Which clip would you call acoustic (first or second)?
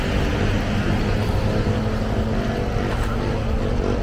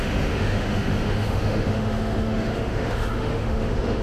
first